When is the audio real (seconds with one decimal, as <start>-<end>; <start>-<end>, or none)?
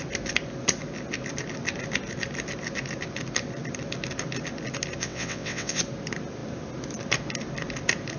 0.0-5.0; 5.8-8.2